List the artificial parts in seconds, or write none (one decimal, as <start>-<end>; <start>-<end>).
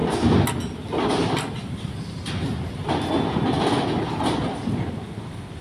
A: none